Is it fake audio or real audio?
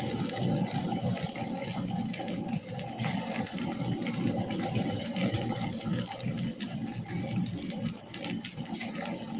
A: real